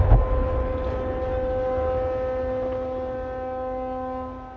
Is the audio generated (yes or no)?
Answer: no